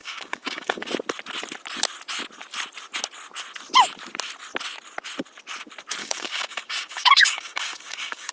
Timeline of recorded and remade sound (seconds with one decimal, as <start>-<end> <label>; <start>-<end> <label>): 0.0-0.9 remade; 0.9-6.0 recorded; 6.0-8.3 remade